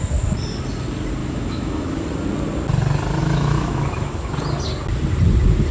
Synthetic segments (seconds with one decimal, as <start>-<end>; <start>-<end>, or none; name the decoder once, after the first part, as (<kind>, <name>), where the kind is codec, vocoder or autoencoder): 1.2-2.0 (autoencoder, DAC-VAE); 3.2-4.3